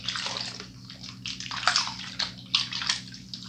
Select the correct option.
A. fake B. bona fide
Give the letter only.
B